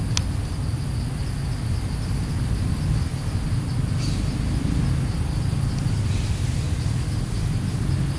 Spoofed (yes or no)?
no